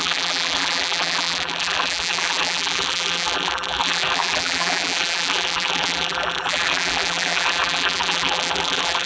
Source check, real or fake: fake